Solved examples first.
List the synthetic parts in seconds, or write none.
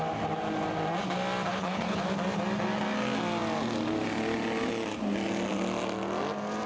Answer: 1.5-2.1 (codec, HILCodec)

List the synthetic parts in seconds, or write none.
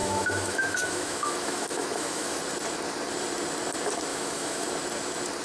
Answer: 0.0-2.4 (autoencoder, DAC-VAE); 4.1-4.7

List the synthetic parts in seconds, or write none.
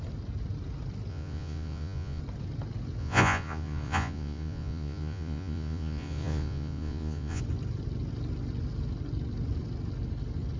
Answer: 1.1-2.2 (vocoder, Vocos); 3.0-7.4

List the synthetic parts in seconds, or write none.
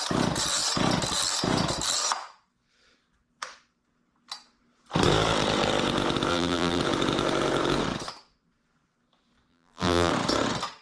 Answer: 6.3-6.8 (vocoder, BigVGAN v2); 9.5-10.1